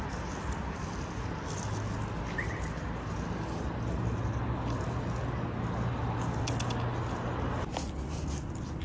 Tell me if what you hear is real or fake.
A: real